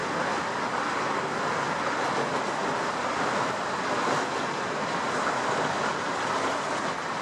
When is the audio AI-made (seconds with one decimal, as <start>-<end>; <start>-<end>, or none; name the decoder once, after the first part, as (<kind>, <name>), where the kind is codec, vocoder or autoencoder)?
2.6-6.8 (vocoder, BigVGAN v2)

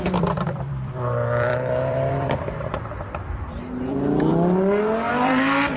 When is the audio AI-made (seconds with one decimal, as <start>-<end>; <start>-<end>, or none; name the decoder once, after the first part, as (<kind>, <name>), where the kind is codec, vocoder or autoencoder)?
0.0-4.3 (vocoder, BigVGAN v2); 5.1-5.8

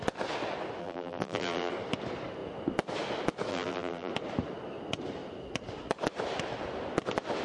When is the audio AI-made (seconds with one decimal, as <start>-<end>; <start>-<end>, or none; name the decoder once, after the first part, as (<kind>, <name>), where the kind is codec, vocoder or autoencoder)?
0.8-1.7 (vocoder, BigVGAN v2); 3.5-4.1

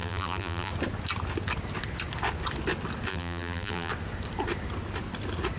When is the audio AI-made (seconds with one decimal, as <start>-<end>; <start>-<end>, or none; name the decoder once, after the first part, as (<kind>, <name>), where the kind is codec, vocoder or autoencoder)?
0.0-0.7 (vocoder, BigVGAN v2); 3.1-3.9

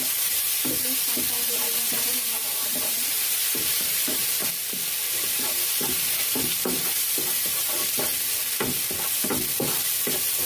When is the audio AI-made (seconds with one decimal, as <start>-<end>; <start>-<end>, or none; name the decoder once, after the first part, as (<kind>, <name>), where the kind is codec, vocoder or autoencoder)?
0.0-4.4 (vocoder, BigVGAN v2); 5.1-8.1

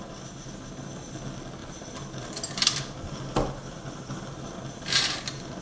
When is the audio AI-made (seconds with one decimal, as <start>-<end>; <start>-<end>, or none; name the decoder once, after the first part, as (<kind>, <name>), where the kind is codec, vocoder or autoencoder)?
1.6-5.0 (vocoder, BigVGAN v2)

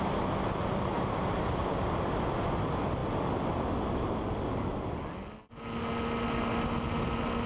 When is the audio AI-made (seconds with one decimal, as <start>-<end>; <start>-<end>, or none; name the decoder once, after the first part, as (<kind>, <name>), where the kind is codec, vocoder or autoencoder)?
none